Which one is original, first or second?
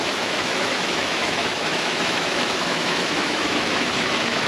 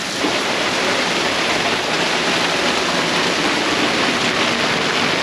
second